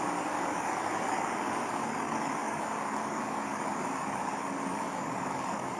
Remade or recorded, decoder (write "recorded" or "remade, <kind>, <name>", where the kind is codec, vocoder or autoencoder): remade, codec, DAC